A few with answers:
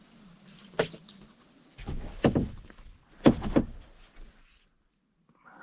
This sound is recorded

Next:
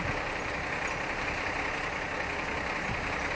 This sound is recorded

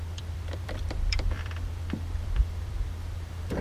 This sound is remade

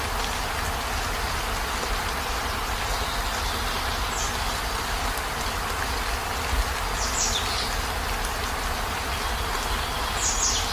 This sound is recorded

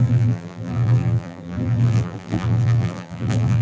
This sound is remade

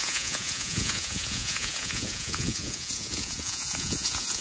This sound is remade